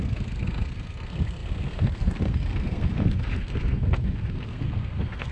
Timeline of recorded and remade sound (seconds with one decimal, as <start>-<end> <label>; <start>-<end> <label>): 0.0-5.3 remade